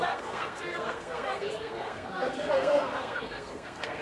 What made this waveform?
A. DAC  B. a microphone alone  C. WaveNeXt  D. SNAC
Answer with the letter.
D